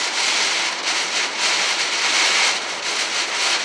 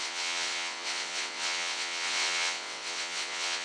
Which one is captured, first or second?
first